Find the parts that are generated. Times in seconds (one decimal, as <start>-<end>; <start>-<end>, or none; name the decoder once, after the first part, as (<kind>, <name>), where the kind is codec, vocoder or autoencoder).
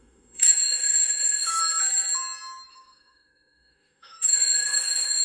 0.0-1.6 (autoencoder, DAC-VAE); 2.7-5.2